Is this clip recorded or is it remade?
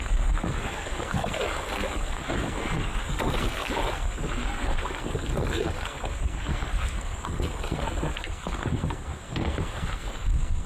remade